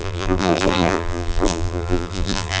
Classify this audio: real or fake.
fake